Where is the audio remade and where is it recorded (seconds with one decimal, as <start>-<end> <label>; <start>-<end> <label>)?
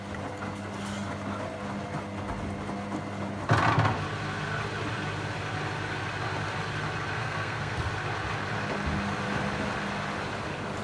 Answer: 0.0-7.2 recorded; 7.2-7.9 remade; 7.9-10.8 recorded